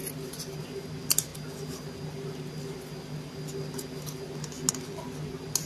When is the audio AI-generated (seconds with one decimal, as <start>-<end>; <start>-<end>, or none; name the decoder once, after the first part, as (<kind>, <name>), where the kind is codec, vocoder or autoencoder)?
none